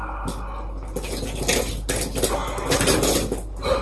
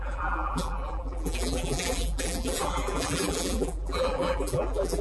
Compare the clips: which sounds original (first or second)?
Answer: first